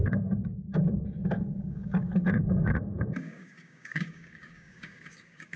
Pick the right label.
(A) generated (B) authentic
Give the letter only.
A